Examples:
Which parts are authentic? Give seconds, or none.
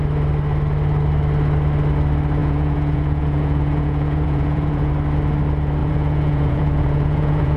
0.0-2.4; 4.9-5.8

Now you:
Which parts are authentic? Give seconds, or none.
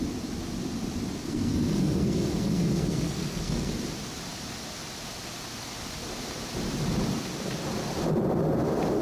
0.0-1.2; 3.7-9.0